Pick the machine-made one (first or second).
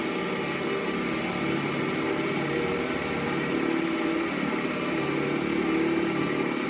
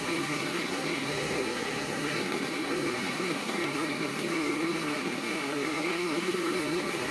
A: second